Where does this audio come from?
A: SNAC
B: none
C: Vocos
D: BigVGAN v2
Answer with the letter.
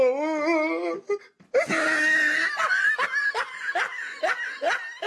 B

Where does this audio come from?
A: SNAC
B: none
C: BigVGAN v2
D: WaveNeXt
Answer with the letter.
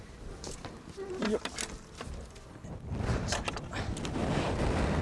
C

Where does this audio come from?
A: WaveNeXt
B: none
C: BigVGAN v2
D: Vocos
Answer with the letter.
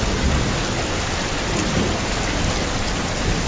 B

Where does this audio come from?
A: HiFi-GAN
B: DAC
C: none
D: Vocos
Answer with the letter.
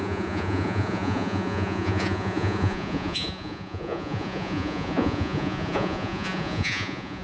D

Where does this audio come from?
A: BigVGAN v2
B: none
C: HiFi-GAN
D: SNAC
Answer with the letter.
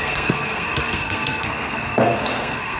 D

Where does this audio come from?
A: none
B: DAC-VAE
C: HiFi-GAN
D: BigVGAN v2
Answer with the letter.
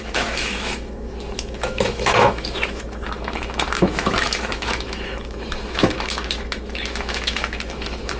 B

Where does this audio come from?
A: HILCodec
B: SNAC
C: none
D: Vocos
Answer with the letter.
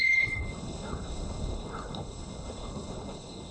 A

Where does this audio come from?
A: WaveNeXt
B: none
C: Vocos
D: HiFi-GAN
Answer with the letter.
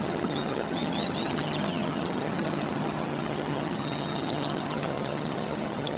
D